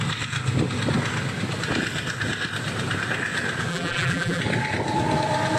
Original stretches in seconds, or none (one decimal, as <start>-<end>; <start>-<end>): 0.0-3.7; 4.4-5.6